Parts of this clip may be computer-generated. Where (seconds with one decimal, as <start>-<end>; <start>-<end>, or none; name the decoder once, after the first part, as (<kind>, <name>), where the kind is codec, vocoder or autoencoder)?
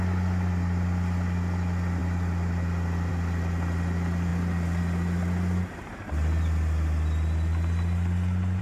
none